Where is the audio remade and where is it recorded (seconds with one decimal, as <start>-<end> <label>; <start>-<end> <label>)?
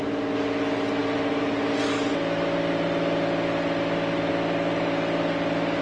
0.0-5.8 recorded